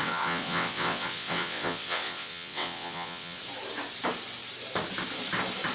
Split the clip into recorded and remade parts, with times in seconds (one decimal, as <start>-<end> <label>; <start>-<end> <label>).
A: 0.0-3.4 remade; 3.4-5.7 recorded